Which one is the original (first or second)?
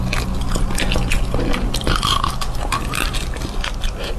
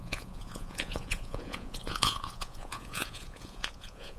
first